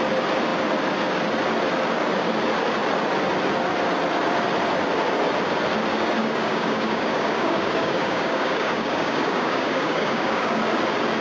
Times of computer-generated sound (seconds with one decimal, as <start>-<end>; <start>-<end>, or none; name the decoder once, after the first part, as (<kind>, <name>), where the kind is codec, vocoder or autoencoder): 6.2-10.6 (codec, DAC)